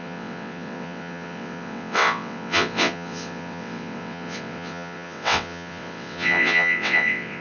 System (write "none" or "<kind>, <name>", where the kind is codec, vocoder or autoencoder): vocoder, WaveNeXt